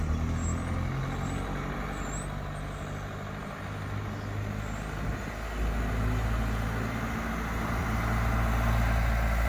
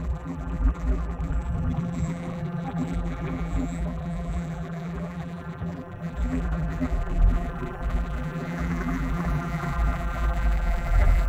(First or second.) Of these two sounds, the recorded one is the first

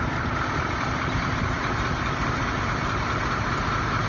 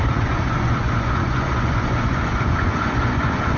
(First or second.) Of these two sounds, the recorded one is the first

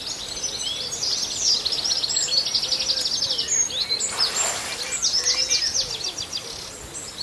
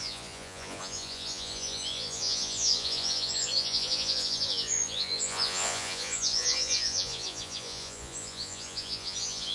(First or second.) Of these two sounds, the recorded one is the first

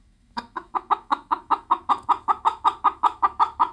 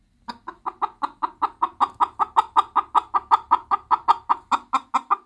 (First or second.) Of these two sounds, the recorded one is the second